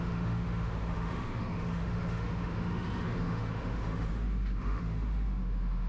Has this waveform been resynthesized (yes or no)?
yes